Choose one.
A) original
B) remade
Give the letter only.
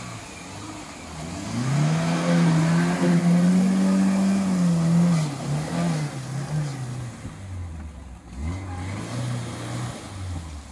A